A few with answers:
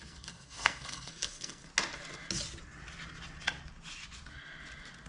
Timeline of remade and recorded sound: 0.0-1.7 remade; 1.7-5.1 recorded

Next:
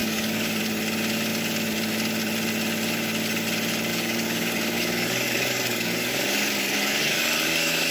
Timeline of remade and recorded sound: 0.0-0.6 remade; 0.6-3.9 recorded; 3.9-7.9 remade

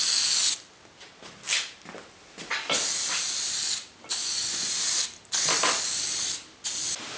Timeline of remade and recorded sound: 0.0-4.2 recorded; 4.2-4.7 remade; 4.7-7.2 recorded

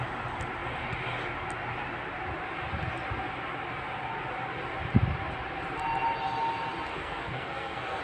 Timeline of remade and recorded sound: 0.0-6.9 recorded; 6.9-8.0 remade

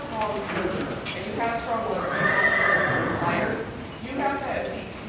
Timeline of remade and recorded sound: 0.0-3.0 remade; 3.0-5.1 recorded

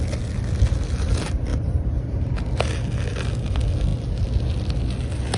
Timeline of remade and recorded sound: 0.0-1.5 recorded; 1.5-2.1 remade; 2.1-5.4 recorded

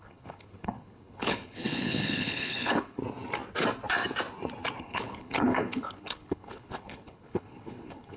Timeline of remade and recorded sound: 0.0-3.0 remade; 3.0-4.8 recorded; 4.8-8.2 remade